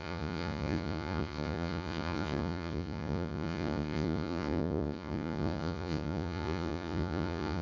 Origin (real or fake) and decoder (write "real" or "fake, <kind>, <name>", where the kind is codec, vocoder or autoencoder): fake, vocoder, Vocos